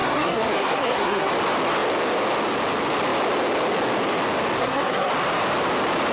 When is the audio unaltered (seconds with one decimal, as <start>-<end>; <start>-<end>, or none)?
1.3-4.6; 5.1-6.1